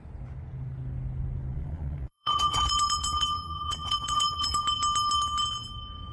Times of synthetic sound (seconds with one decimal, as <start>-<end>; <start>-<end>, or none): 1.5-4.6